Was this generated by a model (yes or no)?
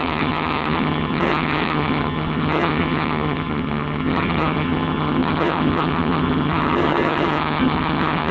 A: yes